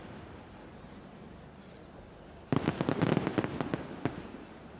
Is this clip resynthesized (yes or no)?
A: no